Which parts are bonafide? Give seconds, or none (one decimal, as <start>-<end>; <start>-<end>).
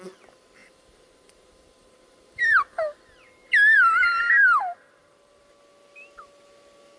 0.0-0.6; 3.0-3.4; 4.0-4.4; 5.5-7.0